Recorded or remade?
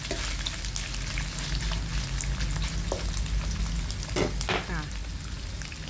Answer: recorded